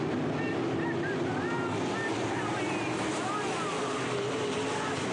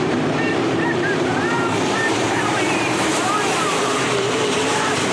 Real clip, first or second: first